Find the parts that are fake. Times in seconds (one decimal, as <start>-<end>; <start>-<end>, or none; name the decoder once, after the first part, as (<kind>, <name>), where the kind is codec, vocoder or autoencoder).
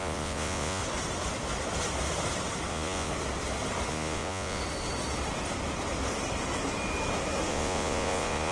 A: 0.0-0.8 (vocoder, Vocos); 2.7-3.1; 3.9-4.6; 7.5-8.5